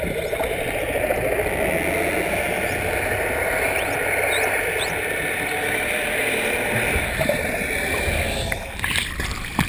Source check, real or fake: real